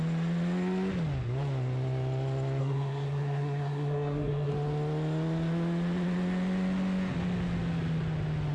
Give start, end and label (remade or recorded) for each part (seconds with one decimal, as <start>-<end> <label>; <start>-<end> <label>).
0.0-2.6 recorded; 2.6-4.5 remade; 4.5-8.5 recorded